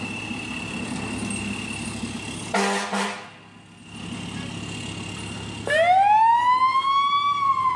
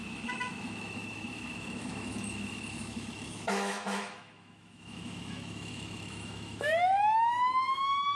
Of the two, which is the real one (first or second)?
first